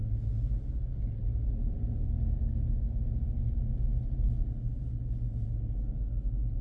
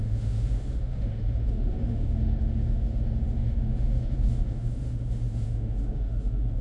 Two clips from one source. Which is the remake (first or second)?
second